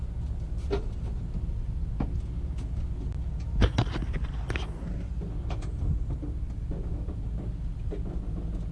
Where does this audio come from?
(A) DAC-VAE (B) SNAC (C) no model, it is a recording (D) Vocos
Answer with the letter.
C